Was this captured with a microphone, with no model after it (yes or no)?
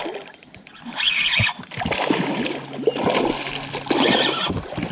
yes